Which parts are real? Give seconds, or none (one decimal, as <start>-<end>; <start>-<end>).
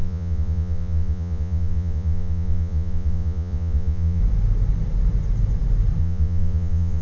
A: 4.2-6.0